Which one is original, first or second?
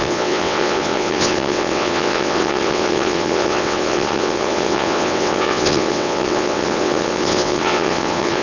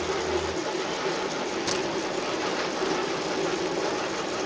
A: second